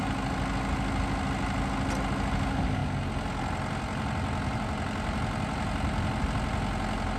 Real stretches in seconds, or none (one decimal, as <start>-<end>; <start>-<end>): 0.0-7.2